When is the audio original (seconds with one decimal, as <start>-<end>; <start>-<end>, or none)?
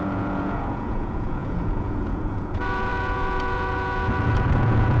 none